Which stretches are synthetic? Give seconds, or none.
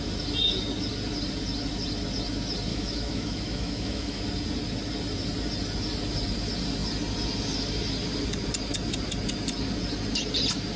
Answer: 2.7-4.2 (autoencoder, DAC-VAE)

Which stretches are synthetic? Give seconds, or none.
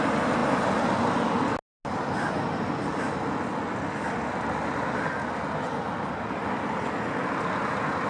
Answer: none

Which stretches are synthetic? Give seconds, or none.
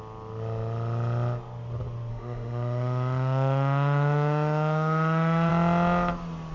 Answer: 2.1-5.5 (autoencoder, DAC-VAE)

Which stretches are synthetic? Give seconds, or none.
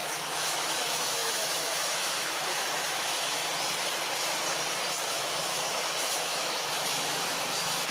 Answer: 0.0-3.4 (autoencoder, DAC-VAE); 5.1-7.9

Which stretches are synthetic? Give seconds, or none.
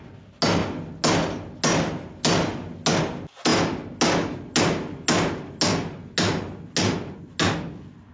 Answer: none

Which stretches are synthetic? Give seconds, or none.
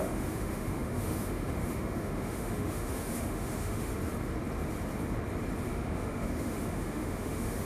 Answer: 0.0-3.9 (autoencoder, DAC-VAE); 5.7-7.7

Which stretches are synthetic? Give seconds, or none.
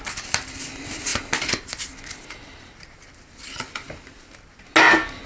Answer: none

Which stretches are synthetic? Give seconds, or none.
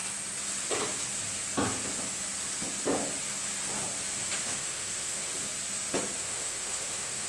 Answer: 4.4-5.3 (autoencoder, DAC-VAE); 6.2-7.3